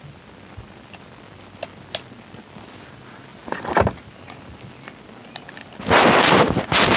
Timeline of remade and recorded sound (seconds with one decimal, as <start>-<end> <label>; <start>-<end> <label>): 0.0-7.0 recorded